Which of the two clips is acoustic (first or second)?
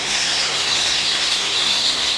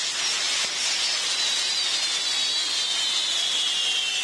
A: second